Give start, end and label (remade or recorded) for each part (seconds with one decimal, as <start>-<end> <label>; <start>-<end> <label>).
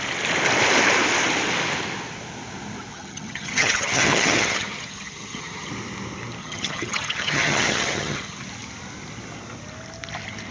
0.0-2.9 recorded; 2.9-5.7 remade; 5.7-6.4 recorded; 6.4-8.4 remade; 8.4-10.5 recorded